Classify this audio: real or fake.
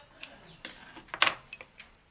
real